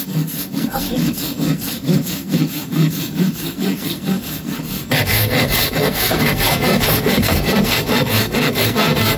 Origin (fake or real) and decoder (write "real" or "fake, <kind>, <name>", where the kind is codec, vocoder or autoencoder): fake, codec, SNAC